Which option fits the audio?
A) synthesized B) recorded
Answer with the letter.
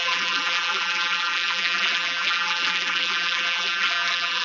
A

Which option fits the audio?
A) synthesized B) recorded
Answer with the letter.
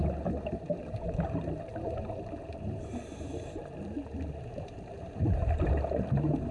A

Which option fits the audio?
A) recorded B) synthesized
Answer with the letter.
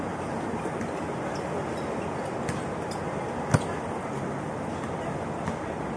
A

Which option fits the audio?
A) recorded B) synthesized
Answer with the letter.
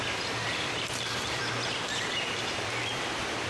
B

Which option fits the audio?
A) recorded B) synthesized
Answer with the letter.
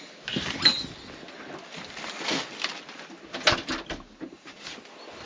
A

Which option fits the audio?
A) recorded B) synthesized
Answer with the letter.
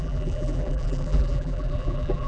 B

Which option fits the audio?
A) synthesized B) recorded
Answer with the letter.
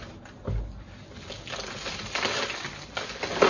B